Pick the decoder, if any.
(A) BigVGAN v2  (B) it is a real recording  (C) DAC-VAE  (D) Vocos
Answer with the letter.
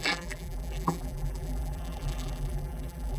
A